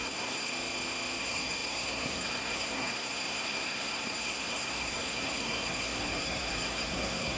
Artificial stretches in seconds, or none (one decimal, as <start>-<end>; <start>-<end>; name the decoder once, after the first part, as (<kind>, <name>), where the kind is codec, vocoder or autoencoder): 0.0-0.5 (codec, SNAC); 1.2-7.4